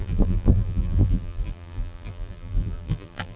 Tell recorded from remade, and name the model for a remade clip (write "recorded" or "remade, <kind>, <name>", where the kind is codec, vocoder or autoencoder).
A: remade, vocoder, BigVGAN v2